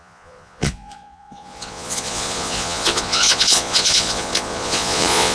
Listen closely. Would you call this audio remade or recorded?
remade